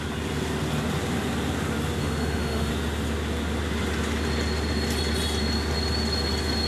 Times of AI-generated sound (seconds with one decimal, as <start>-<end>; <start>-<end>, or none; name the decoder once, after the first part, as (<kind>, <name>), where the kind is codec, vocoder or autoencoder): 2.0-2.7 (autoencoder, DAC-VAE)